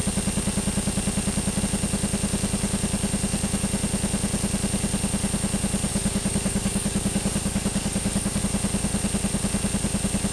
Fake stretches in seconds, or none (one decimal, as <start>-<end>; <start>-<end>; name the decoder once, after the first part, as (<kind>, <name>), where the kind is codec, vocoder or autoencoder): 5.9-8.4 (codec, DAC)